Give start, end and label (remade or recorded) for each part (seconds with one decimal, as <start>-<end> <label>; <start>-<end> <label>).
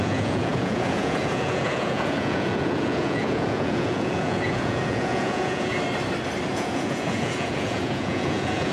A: 0.0-5.7 remade; 5.7-6.5 recorded; 6.5-8.7 remade